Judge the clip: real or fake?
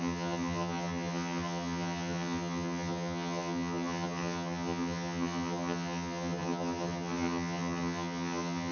fake